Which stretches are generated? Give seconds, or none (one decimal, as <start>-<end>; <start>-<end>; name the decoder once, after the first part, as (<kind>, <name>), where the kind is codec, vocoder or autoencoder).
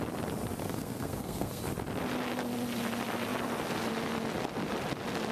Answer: 0.6-1.6 (codec, SNAC)